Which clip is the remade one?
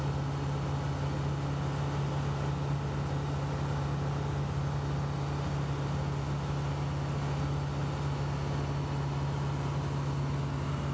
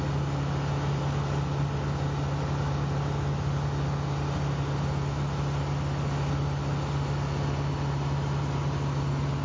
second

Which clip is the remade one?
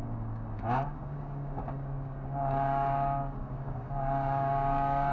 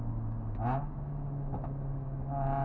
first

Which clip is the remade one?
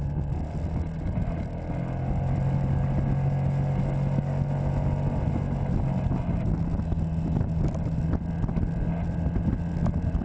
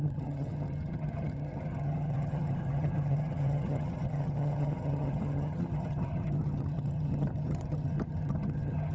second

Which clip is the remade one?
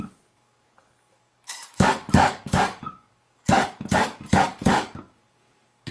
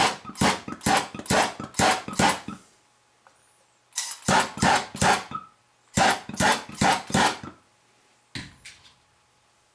first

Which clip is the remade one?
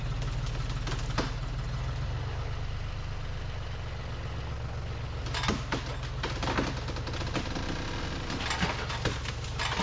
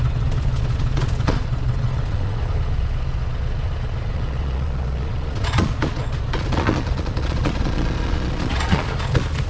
second